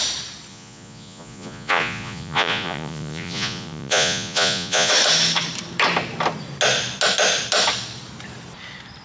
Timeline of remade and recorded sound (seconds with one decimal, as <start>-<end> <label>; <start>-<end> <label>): 0.0-0.5 recorded; 0.5-4.9 remade; 4.9-9.0 recorded

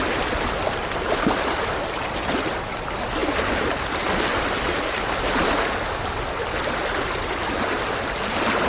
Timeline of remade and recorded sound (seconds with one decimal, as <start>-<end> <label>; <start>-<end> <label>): 0.0-8.7 recorded

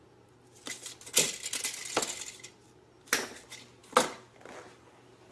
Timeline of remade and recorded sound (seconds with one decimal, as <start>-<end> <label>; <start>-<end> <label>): 0.0-5.3 recorded

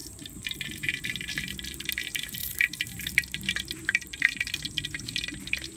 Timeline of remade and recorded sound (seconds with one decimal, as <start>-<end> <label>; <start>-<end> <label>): 0.0-1.9 remade; 1.9-2.4 recorded; 2.4-4.6 remade; 4.6-5.8 recorded

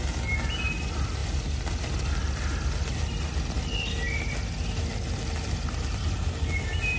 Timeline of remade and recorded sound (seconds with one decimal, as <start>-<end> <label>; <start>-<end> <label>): 0.0-7.0 recorded

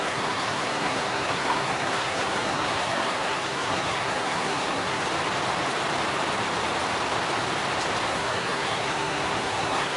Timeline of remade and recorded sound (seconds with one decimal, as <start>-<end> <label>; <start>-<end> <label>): 0.0-5.0 remade; 5.0-8.1 recorded; 8.1-10.0 remade

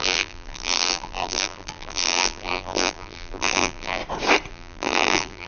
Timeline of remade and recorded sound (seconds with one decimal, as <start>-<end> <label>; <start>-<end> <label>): 0.0-4.0 remade; 4.0-4.5 recorded; 4.5-5.5 remade